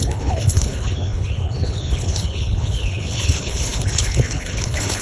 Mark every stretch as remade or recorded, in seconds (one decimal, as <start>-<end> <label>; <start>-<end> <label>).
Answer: 0.0-5.0 remade